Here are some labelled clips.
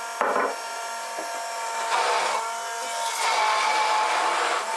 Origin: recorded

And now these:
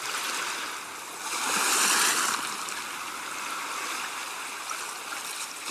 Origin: recorded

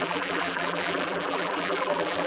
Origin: remade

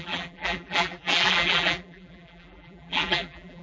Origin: remade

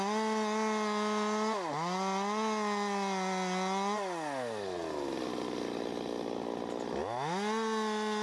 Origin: recorded